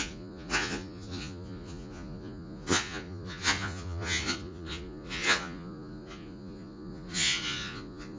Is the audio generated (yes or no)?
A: yes